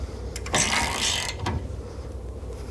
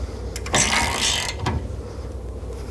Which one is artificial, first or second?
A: first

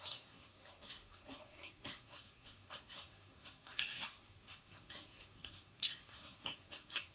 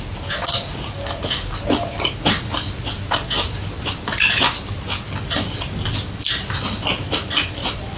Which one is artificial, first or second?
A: first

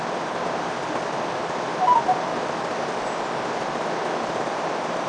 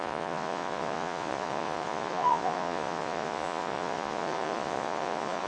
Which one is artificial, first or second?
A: second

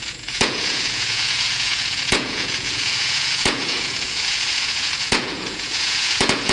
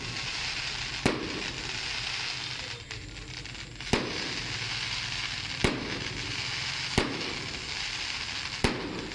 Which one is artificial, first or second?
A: first